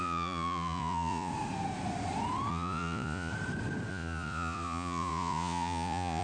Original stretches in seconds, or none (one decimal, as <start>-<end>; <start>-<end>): 1.3-2.5; 3.3-3.9